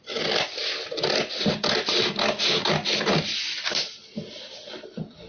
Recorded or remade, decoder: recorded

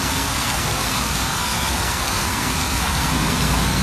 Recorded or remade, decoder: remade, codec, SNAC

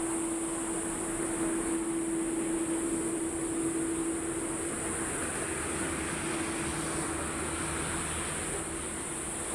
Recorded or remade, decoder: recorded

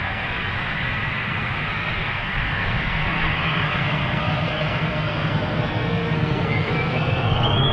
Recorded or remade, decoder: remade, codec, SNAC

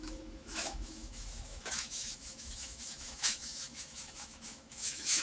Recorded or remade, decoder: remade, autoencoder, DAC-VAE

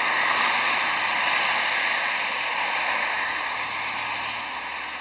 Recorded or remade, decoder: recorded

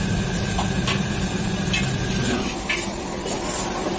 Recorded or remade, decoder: recorded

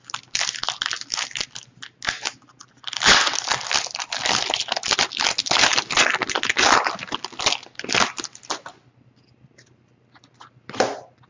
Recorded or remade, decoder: recorded